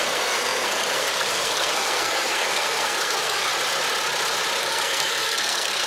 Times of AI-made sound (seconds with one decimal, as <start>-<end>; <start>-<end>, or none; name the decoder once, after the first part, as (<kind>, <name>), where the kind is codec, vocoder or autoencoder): 0.0-3.5 (codec, SNAC); 4.6-5.9